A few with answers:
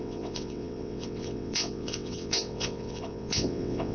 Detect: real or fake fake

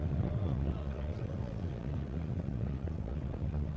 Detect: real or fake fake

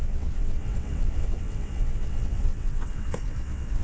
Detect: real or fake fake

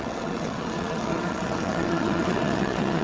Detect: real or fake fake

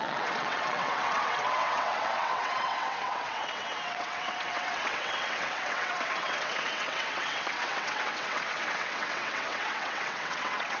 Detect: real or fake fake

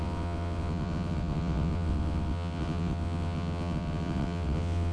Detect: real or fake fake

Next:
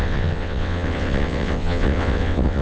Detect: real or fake fake